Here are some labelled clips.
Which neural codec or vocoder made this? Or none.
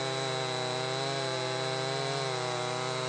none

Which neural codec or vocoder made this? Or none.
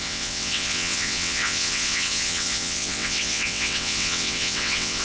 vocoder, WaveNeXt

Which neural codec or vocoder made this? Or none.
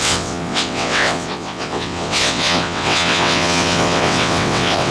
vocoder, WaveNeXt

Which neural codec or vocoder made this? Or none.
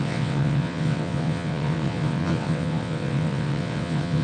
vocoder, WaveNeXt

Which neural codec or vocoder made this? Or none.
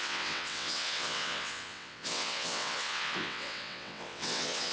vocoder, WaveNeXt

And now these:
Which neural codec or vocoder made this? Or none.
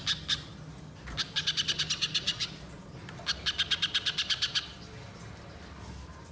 none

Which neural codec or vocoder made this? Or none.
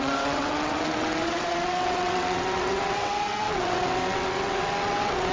vocoder, WaveNeXt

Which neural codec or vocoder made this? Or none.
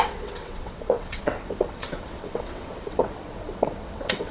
vocoder, WaveNeXt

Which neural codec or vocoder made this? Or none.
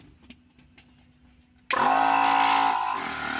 none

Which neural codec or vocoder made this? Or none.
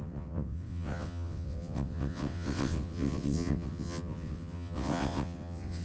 vocoder, WaveNeXt